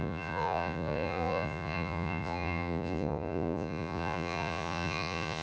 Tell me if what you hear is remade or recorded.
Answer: remade